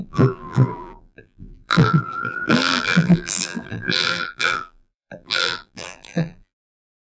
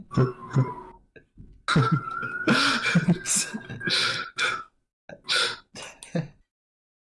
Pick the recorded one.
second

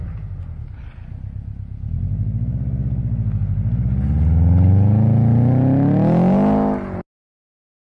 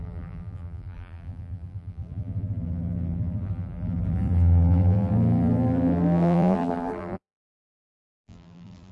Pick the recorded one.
first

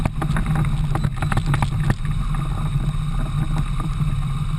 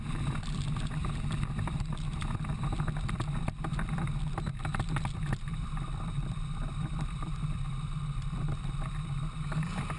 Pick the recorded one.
first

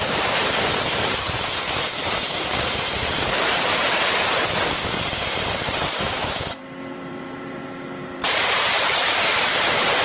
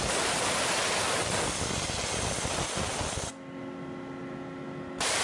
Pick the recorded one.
second